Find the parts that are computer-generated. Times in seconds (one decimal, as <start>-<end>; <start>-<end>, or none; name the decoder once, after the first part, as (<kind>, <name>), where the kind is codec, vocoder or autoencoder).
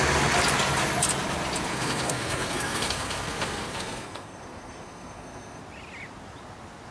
1.7-5.6 (codec, SNAC)